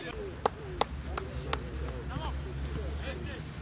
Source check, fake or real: real